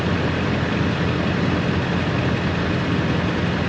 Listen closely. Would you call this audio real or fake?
real